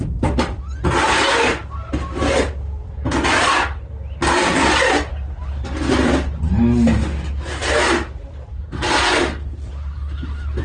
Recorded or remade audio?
recorded